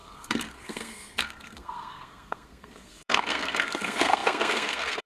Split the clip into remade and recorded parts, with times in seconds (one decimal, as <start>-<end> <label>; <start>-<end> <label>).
0.0-5.1 remade